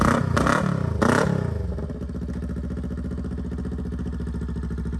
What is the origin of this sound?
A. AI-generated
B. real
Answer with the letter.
B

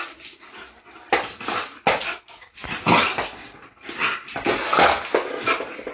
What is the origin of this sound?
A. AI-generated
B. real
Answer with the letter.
B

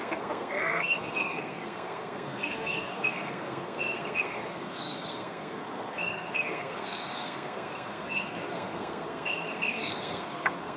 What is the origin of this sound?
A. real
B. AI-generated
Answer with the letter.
B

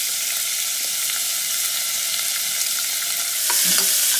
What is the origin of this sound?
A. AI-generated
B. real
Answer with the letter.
B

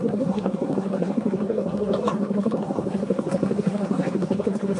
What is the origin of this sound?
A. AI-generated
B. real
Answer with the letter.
A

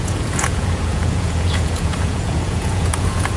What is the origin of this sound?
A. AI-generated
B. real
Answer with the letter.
A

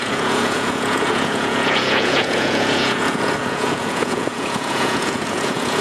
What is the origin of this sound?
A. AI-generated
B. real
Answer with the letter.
A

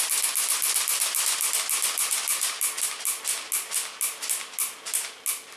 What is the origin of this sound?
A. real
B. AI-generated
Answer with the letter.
A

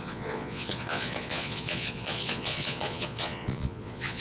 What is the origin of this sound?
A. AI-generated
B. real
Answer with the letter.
A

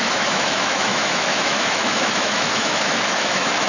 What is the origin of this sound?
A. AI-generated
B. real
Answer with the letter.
A